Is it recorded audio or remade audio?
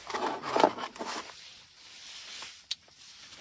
recorded